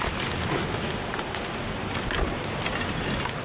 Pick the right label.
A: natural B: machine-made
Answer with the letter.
A